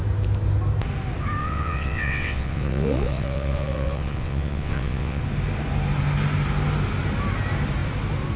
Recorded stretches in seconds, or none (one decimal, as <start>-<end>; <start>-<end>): 0.0-1.4; 5.2-8.4